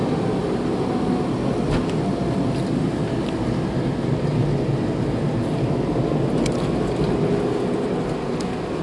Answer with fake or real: real